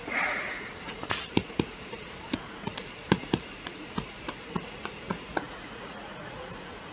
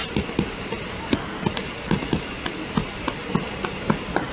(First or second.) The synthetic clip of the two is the first